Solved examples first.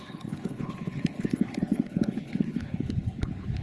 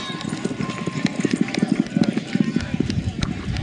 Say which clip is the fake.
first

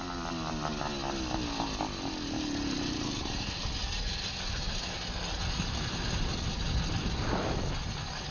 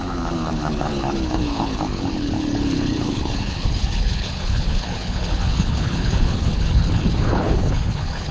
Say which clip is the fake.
second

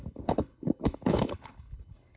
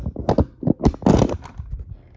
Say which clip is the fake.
first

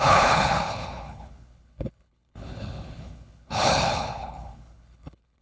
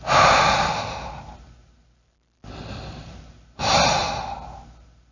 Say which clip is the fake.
first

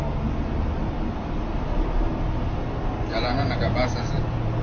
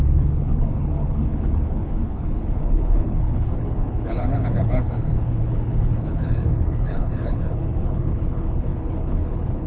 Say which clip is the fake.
second